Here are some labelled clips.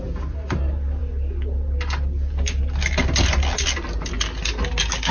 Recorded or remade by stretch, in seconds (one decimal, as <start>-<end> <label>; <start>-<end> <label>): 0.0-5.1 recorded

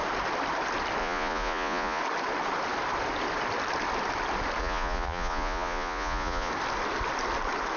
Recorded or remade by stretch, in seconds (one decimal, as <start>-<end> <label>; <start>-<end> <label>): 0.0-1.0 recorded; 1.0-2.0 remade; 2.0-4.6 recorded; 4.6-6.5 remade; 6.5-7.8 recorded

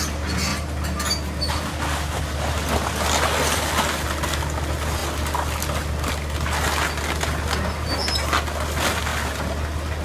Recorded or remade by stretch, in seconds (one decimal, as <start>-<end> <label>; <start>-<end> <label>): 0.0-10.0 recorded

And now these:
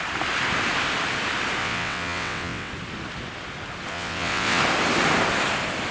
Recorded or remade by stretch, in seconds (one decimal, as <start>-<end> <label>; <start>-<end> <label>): 0.0-1.6 recorded; 1.6-2.7 remade; 2.7-3.9 recorded; 3.9-4.6 remade; 4.6-5.9 recorded

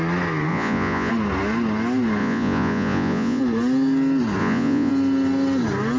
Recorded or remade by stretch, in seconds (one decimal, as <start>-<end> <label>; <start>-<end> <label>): 0.0-0.5 recorded; 0.5-1.1 remade; 1.1-2.2 recorded; 2.2-3.4 remade; 3.4-4.4 recorded; 4.4-4.9 remade; 4.9-6.0 recorded